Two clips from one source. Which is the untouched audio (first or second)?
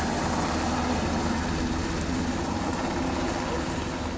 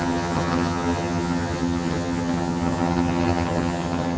first